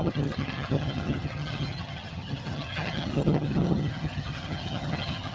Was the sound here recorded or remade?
remade